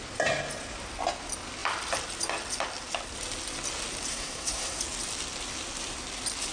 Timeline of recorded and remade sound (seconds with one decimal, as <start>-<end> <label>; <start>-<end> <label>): 0.0-4.1 recorded; 4.1-4.8 remade; 4.8-6.5 recorded